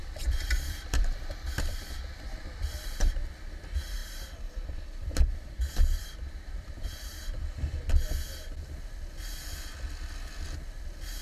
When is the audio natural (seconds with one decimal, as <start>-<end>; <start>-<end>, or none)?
3.2-4.0; 7.2-11.2